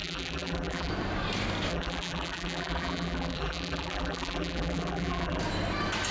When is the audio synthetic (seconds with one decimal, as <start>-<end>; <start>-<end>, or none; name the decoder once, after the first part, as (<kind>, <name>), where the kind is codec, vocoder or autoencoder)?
0.0-0.9 (vocoder, BigVGAN v2); 1.7-5.4